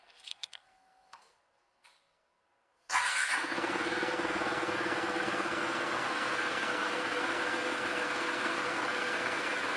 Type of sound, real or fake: fake